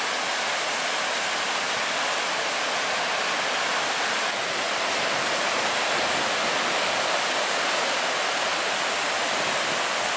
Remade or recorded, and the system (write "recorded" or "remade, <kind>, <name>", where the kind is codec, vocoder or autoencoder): recorded